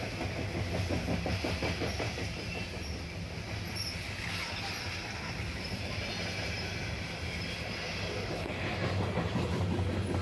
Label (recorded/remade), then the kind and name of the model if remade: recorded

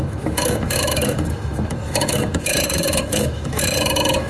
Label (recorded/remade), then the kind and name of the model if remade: remade, autoencoder, DAC-VAE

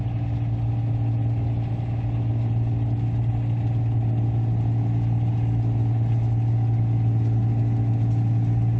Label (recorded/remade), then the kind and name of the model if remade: recorded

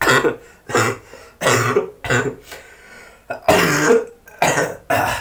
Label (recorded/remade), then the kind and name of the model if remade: recorded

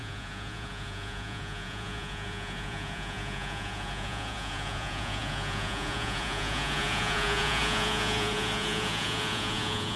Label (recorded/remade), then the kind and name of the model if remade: remade, vocoder, Vocos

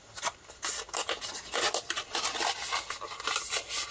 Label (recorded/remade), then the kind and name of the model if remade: recorded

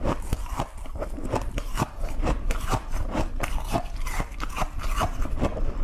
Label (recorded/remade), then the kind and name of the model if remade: remade, vocoder, BigVGAN v2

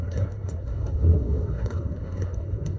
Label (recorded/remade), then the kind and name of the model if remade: remade, codec, SNAC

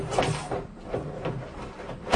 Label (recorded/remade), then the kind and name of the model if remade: recorded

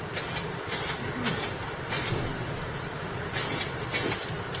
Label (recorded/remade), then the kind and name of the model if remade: recorded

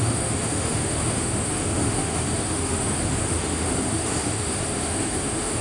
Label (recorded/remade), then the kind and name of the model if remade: remade, autoencoder, DAC-VAE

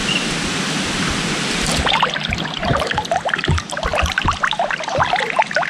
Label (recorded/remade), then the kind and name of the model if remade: recorded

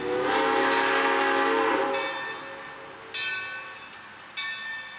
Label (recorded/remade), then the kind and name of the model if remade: recorded